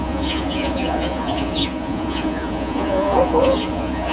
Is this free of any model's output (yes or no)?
no